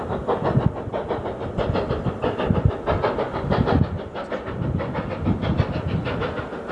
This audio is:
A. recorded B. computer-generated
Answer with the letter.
A